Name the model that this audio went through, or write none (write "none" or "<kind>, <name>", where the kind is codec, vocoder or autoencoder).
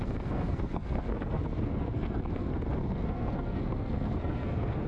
codec, SNAC